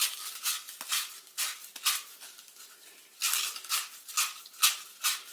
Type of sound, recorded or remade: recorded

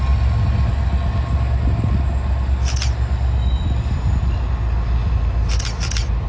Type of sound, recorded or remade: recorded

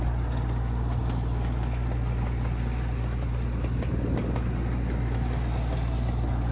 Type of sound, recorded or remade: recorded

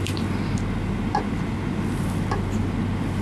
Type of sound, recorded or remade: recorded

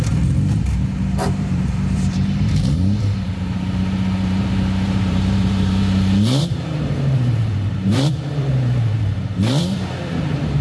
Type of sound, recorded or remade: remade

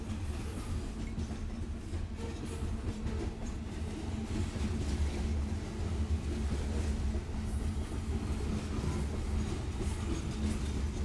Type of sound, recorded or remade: recorded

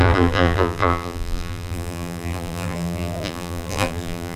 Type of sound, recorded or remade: remade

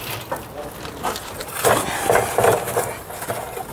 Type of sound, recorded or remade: recorded